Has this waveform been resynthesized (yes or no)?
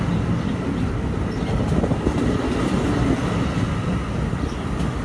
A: no